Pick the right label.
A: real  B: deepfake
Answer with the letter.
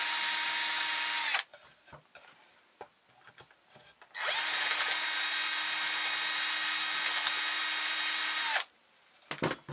A